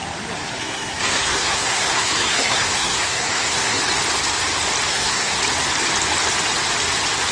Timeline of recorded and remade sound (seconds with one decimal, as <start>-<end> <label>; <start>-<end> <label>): 0.0-0.6 recorded; 0.6-3.8 remade; 3.8-4.9 recorded; 4.9-5.4 remade; 5.4-7.3 recorded

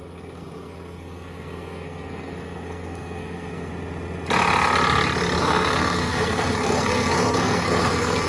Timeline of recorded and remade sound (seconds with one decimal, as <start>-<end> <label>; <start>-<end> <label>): 0.0-3.7 remade; 3.7-5.4 recorded; 5.4-8.3 remade

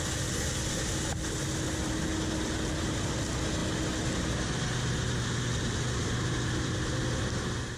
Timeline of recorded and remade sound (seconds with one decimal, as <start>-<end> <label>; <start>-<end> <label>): 0.0-7.8 recorded

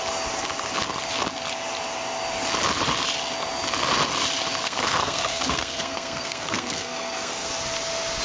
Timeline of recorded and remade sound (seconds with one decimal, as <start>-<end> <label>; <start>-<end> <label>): 0.0-4.6 recorded; 4.6-7.5 remade; 7.5-8.2 recorded